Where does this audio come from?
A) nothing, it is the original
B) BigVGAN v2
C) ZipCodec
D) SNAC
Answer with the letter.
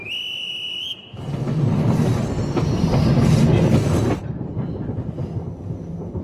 A